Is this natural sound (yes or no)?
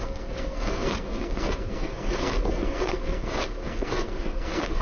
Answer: no